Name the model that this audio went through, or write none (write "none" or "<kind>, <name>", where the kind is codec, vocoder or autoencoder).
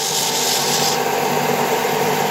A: none